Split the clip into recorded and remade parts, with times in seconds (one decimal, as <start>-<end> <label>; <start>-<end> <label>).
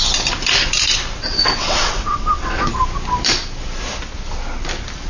0.0-1.6 recorded; 1.6-2.7 remade; 2.7-5.1 recorded